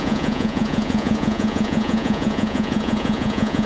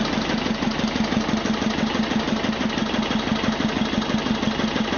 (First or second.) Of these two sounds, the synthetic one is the first